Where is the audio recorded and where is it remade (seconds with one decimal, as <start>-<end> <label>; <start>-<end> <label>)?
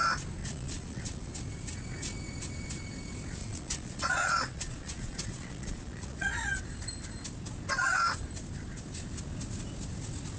0.0-0.4 recorded; 0.4-1.3 remade; 1.3-3.4 recorded; 3.4-6.6 remade; 6.6-10.4 recorded